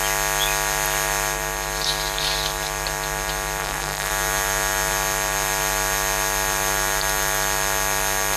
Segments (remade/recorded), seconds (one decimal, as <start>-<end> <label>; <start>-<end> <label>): 0.0-3.6 recorded; 3.6-4.1 remade; 4.1-8.4 recorded